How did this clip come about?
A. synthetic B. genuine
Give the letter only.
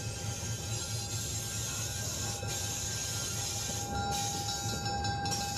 B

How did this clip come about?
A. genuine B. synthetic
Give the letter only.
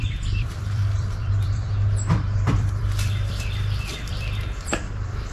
B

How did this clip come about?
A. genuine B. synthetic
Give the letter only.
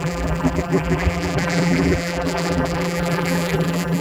B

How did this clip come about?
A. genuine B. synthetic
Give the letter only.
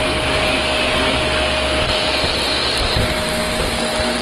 A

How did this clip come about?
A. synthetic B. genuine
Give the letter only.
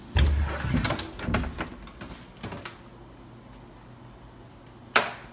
B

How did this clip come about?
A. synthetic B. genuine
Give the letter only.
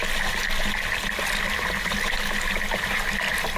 B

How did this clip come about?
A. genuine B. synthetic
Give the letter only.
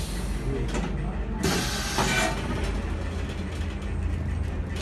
A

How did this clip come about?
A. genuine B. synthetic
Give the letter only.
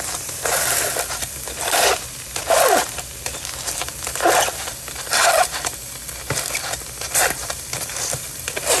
B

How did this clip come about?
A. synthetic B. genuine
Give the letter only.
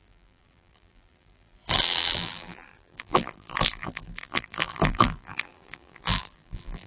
A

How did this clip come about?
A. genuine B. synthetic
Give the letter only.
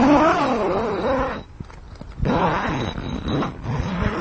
A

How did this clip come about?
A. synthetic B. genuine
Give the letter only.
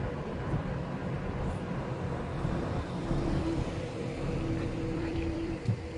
A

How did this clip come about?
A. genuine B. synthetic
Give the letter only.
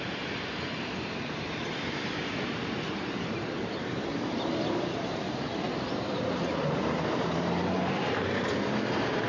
B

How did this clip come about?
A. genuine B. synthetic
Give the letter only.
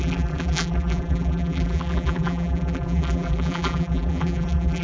B